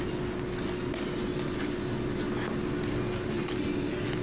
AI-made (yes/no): no